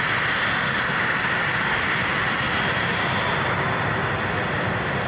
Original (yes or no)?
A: yes